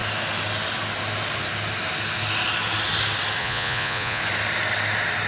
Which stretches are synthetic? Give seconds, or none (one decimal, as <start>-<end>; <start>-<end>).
3.4-4.2